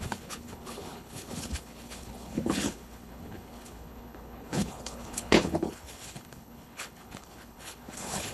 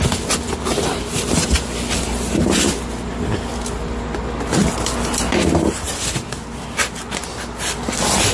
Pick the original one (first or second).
second